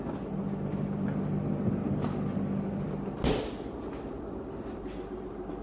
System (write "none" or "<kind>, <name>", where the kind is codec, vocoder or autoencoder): none